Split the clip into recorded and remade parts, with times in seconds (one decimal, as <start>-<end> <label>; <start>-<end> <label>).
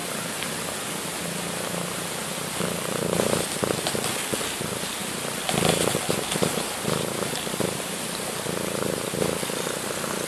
0.0-10.3 recorded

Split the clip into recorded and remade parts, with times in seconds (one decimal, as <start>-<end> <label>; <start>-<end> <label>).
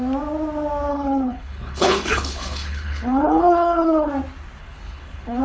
0.0-0.9 recorded; 0.9-4.1 remade; 4.1-4.6 recorded; 4.6-5.4 remade